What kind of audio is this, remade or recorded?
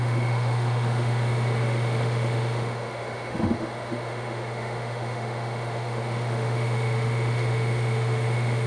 remade